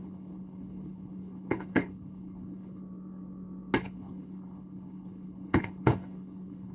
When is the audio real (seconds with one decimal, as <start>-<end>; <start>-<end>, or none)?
2.8-3.8